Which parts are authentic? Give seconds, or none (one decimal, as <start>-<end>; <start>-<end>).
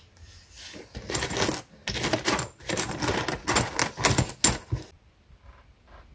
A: 0.0-6.1